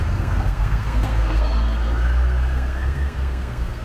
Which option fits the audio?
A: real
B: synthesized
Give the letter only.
B